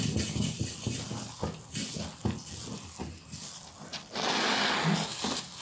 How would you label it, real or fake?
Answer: real